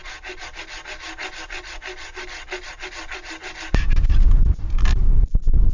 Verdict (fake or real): real